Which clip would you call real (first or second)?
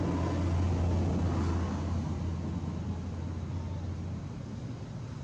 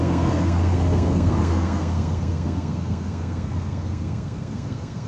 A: first